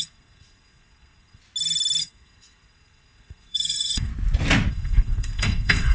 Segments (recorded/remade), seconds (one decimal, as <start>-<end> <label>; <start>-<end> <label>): 0.0-1.4 remade; 1.4-2.0 recorded; 2.0-4.1 remade; 4.1-4.7 recorded; 4.7-5.9 remade